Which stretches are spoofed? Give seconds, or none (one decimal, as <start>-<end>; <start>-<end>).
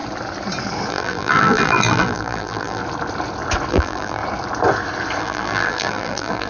0.9-2.8; 3.7-4.2; 5.2-6.5